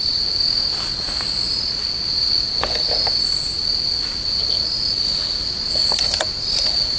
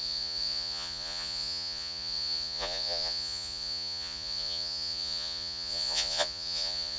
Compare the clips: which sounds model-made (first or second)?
second